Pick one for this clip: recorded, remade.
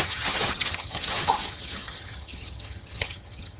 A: remade